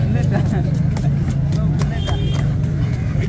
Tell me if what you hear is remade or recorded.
remade